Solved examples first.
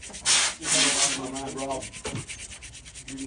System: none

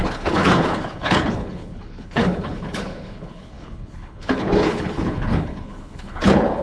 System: codec, HILCodec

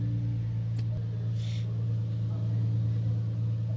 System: none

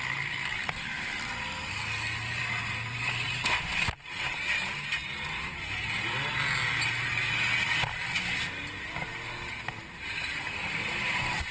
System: none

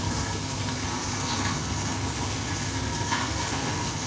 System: codec, SNAC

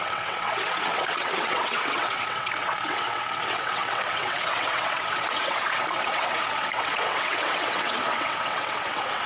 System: vocoder, WaveNeXt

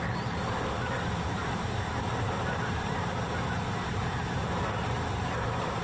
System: none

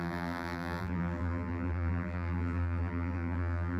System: vocoder, BigVGAN v2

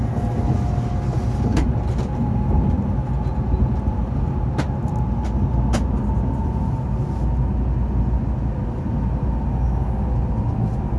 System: none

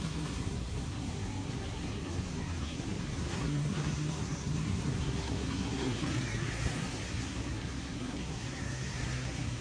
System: codec, SNAC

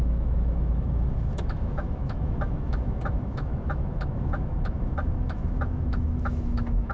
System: autoencoder, DAC-VAE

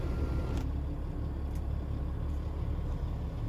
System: none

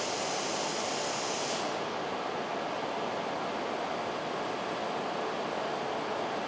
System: none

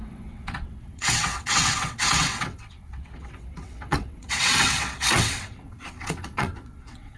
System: vocoder, WaveNeXt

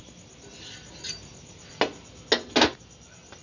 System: none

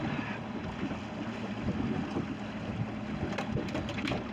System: none